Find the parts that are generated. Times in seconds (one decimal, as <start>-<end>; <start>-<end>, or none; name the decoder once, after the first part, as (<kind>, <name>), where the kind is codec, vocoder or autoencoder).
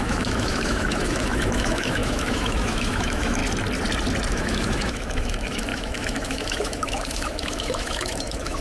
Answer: 0.0-3.4 (autoencoder, DAC-VAE); 4.3-8.6